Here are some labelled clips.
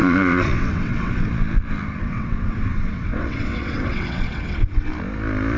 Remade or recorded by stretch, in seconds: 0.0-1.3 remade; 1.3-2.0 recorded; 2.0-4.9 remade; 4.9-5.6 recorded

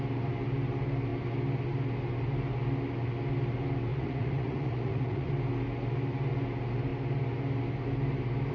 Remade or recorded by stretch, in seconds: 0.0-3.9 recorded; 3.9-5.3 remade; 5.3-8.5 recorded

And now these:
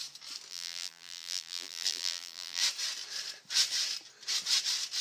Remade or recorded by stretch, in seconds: 0.0-0.5 recorded; 0.5-2.6 remade; 2.6-5.0 recorded

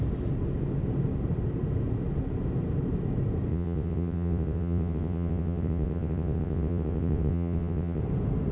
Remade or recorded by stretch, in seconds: 0.0-3.5 recorded; 3.5-8.0 remade; 8.0-8.5 recorded

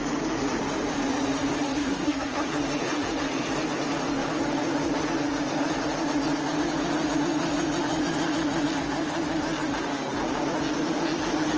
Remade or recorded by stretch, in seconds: 0.0-1.7 recorded; 1.7-2.5 remade; 2.5-11.6 recorded

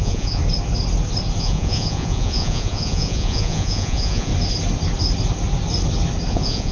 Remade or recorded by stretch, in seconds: 0.0-0.4 remade; 0.4-1.4 recorded; 1.4-4.3 remade; 4.3-6.3 recorded; 6.3-6.7 remade